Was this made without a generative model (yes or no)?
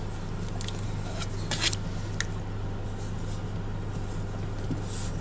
yes